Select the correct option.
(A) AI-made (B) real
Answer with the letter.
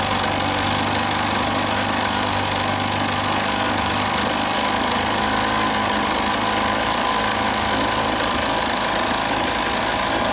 B